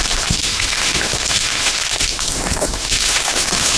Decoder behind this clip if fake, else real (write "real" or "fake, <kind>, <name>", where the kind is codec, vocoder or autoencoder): fake, autoencoder, DAC-VAE